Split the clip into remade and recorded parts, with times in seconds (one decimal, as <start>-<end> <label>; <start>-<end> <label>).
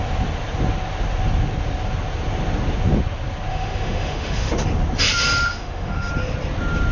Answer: 0.0-3.5 recorded; 3.5-4.5 remade; 4.5-5.5 recorded; 5.5-6.1 remade; 6.1-6.9 recorded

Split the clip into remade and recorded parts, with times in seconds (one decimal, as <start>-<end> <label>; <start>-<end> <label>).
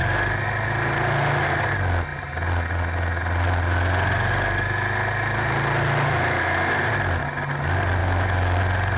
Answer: 0.0-8.0 recorded; 8.0-8.6 remade; 8.6-9.0 recorded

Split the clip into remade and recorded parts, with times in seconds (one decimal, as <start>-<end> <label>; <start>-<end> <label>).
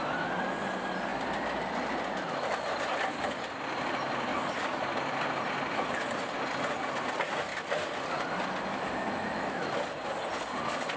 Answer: 0.0-4.3 recorded; 4.3-4.8 remade; 4.8-8.7 recorded; 8.7-9.7 remade; 9.7-11.0 recorded